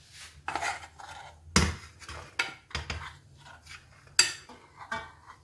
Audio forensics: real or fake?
real